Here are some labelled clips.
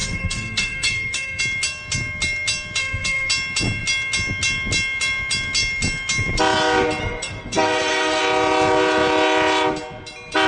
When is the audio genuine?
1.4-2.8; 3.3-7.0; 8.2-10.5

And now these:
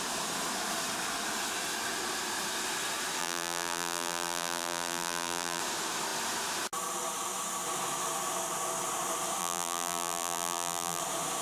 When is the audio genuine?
0.0-3.2; 5.6-9.4; 11.0-11.4

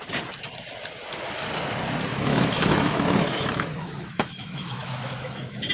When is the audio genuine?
0.0-2.1

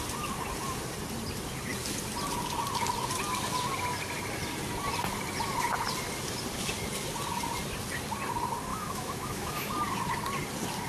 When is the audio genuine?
0.0-8.7; 9.7-10.9

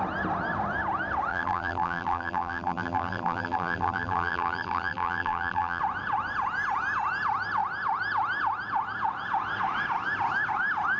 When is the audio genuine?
0.0-1.3; 5.8-11.0

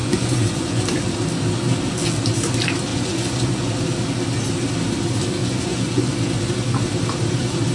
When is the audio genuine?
0.8-2.9; 3.7-5.4; 6.1-7.7

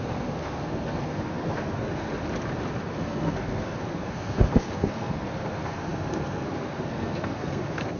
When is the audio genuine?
2.1-2.9

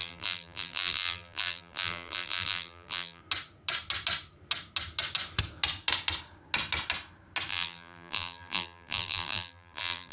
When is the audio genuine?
3.2-7.5